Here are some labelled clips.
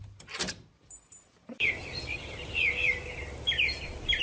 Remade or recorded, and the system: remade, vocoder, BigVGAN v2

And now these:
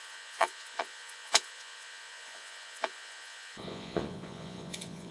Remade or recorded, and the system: remade, vocoder, Vocos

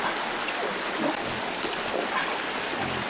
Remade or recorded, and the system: recorded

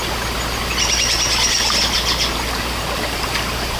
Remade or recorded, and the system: recorded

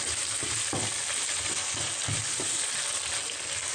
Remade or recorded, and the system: recorded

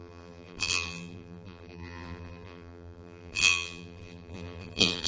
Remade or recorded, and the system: remade, vocoder, BigVGAN v2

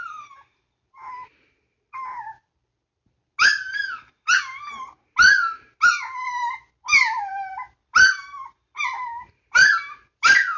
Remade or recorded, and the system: recorded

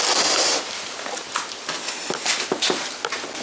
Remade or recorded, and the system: recorded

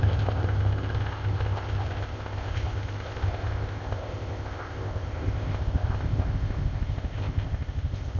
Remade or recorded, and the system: remade, codec, ZipCodec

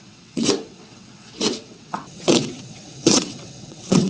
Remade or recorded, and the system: remade, vocoder, WaveNeXt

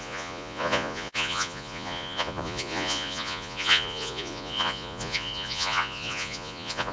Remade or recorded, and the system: remade, vocoder, Vocos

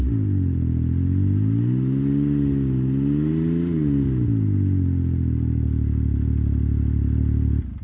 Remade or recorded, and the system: recorded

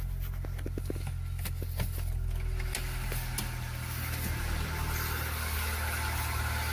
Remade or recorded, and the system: recorded